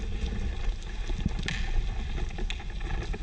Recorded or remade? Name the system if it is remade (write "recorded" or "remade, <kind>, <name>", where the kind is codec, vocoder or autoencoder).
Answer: recorded